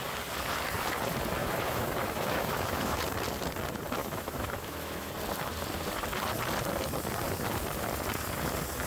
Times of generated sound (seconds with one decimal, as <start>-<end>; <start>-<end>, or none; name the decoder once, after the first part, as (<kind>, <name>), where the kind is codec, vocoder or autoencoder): 1.4-3.0 (autoencoder, DAC-VAE); 4.0-5.1